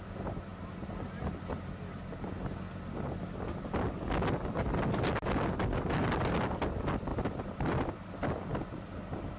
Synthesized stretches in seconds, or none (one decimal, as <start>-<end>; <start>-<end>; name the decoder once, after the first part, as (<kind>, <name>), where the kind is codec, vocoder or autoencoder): 7.1-7.9 (vocoder, BigVGAN v2); 8.5-9.4